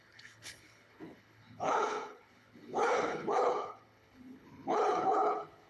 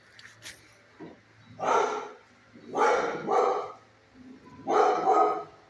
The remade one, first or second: first